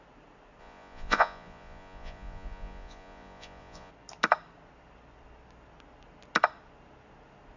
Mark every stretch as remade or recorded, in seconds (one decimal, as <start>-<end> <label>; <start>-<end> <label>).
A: 0.0-0.6 recorded; 0.6-3.9 remade; 3.9-7.6 recorded